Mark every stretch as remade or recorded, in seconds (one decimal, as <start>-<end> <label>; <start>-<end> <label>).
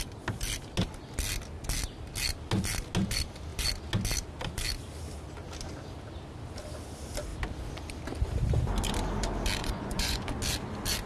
0.0-9.6 recorded; 9.6-10.3 remade; 10.3-11.1 recorded